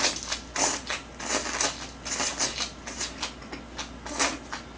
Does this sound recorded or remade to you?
recorded